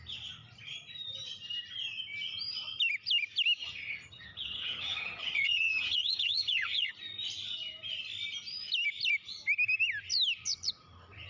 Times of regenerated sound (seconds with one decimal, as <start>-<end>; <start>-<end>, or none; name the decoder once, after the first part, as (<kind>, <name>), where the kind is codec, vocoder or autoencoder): 3.6-6.9 (vocoder, HiFi-GAN)